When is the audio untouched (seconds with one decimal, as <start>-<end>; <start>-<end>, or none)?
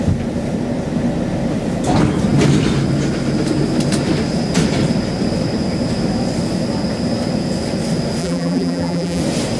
0.0-8.2; 9.2-9.6